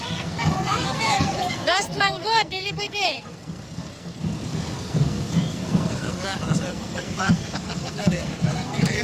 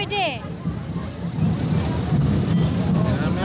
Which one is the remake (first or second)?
first